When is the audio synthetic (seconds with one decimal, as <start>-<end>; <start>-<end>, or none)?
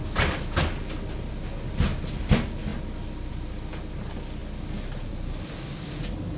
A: none